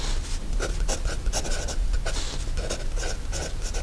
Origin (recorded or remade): recorded